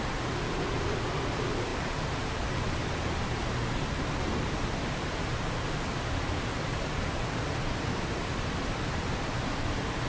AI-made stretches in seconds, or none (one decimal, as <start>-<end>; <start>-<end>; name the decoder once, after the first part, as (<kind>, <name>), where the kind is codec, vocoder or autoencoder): none